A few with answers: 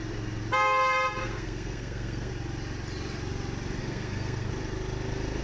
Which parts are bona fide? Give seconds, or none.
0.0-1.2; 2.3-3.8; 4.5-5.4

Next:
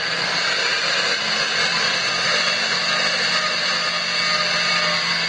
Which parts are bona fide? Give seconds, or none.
0.0-0.7; 1.2-2.8; 3.7-5.3

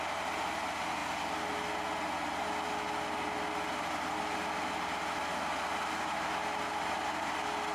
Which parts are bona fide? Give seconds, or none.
0.0-7.7

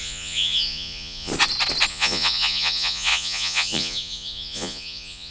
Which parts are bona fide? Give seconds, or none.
1.3-1.9

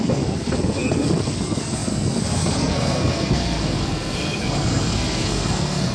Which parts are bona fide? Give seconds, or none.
none